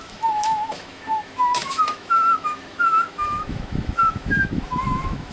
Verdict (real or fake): fake